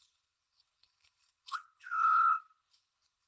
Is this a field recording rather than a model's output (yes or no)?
no